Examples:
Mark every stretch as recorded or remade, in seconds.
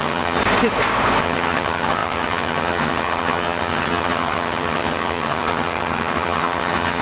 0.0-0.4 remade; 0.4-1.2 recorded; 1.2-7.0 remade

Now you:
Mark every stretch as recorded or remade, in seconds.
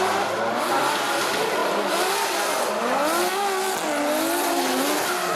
0.0-5.4 recorded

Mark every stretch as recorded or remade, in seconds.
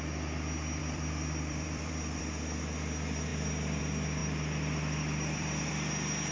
0.0-0.8 recorded; 0.8-2.2 remade; 2.2-4.2 recorded; 4.2-5.7 remade; 5.7-6.3 recorded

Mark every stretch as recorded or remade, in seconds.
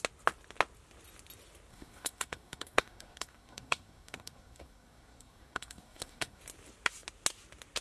0.0-1.7 recorded; 1.7-6.4 remade; 6.4-7.8 recorded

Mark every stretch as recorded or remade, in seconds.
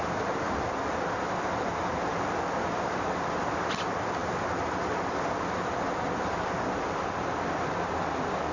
0.0-8.5 recorded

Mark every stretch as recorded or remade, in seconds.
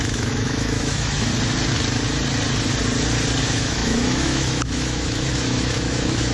0.0-1.3 remade; 1.3-3.4 recorded; 3.4-6.3 remade